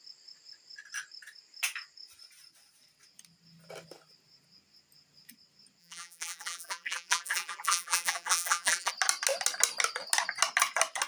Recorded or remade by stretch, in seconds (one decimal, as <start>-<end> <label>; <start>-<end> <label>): 0.0-5.8 recorded; 5.8-8.9 remade; 8.9-11.1 recorded

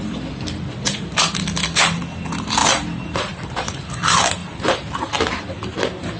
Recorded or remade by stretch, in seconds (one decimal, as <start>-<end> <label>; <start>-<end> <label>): 0.0-2.6 recorded; 2.6-3.9 remade; 3.9-4.4 recorded; 4.4-5.0 remade; 5.0-6.2 recorded

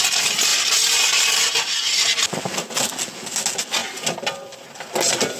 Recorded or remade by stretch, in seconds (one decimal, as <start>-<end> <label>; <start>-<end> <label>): 0.0-5.4 recorded

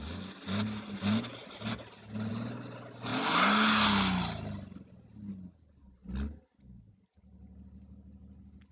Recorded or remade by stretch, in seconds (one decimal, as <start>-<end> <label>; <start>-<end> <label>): 0.0-8.7 recorded

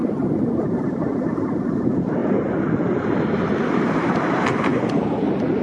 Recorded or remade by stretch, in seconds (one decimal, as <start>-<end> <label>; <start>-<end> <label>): 0.0-0.8 remade; 0.8-4.7 recorded; 4.7-5.6 remade

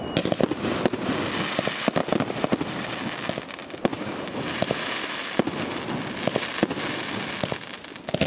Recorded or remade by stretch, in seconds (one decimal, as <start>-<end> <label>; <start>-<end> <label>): 0.0-2.0 recorded; 2.0-2.9 remade; 2.9-3.6 recorded; 3.6-7.4 remade; 7.4-8.3 recorded

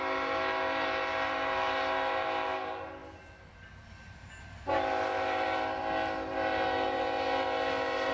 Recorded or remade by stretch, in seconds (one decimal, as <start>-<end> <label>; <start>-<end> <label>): 0.0-8.1 recorded

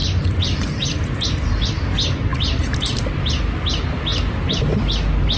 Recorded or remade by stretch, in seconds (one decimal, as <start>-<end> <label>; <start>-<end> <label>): 0.0-1.7 remade; 1.7-5.4 recorded